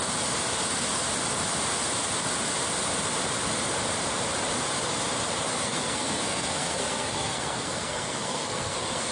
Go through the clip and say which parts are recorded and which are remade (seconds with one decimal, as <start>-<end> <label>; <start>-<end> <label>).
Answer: 0.0-5.5 recorded; 5.5-9.1 remade